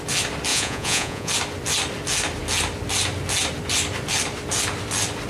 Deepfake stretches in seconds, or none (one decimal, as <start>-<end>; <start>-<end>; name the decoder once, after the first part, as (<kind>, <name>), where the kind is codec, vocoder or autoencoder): 0.5-1.3 (vocoder, Vocos)